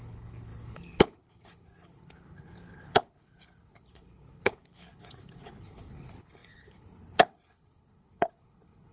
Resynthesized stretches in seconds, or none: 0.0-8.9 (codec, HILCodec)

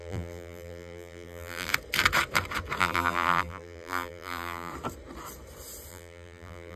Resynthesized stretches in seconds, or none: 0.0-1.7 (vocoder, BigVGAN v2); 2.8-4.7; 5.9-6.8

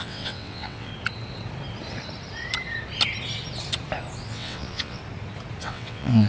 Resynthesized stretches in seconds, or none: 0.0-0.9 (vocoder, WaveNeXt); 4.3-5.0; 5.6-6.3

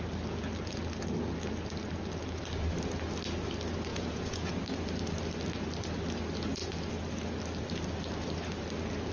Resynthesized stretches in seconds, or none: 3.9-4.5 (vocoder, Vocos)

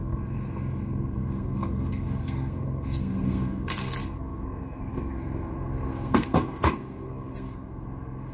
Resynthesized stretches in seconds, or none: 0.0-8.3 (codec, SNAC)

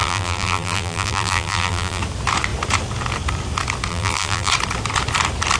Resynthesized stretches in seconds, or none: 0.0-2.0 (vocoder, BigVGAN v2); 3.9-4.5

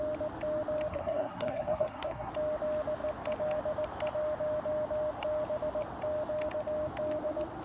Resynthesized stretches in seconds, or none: 0.9-2.3 (codec, SNAC)